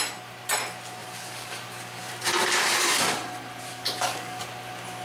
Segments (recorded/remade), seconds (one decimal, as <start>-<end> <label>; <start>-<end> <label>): 0.0-1.0 recorded; 1.0-2.1 remade; 2.1-3.7 recorded; 3.7-4.4 remade; 4.4-5.0 recorded